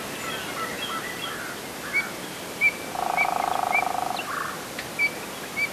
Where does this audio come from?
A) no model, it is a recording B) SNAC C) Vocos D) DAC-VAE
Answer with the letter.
A